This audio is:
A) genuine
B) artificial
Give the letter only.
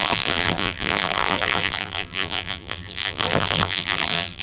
B